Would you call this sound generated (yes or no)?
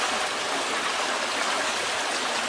no